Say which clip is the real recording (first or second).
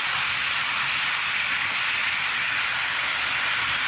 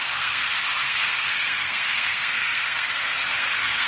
first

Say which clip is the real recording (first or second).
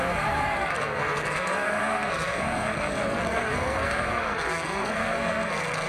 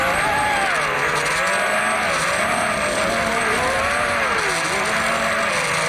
second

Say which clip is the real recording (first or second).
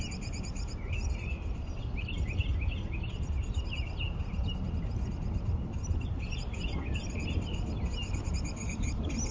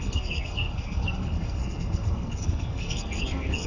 first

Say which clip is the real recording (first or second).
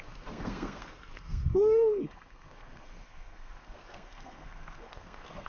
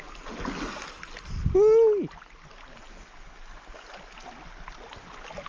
second